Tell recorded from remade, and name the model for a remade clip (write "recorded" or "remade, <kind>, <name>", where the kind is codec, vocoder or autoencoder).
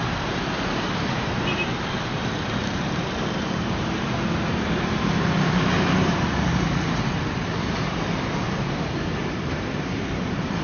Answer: remade, vocoder, BigVGAN v2